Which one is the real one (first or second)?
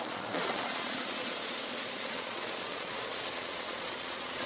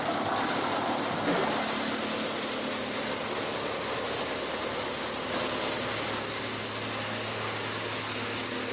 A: second